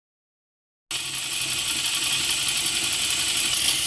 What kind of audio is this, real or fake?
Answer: real